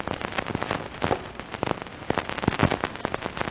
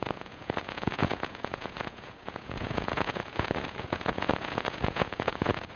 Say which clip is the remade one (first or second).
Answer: second